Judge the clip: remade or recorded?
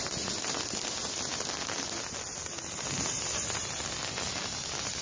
recorded